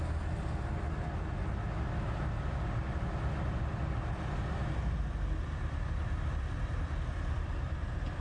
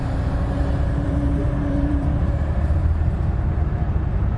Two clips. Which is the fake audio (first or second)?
second